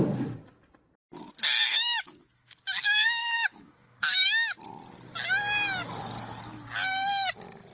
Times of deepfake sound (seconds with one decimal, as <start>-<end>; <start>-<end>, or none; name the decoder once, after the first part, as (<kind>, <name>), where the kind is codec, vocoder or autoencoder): 1.7-2.5 (autoencoder, DAC-VAE); 3.2-4.0